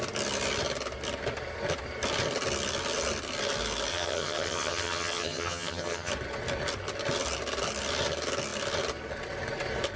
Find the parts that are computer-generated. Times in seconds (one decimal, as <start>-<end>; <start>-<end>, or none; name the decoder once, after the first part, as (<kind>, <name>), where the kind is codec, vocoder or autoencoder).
3.9-6.1 (vocoder, HiFi-GAN)